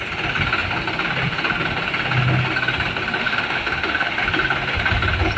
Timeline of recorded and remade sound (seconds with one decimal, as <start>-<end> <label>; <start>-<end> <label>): 0.0-3.2 recorded; 3.2-4.2 remade; 4.2-5.4 recorded